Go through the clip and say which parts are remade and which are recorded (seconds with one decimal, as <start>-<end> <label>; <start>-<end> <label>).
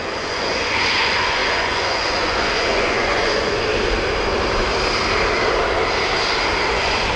0.0-3.7 remade; 3.7-6.7 recorded; 6.7-7.2 remade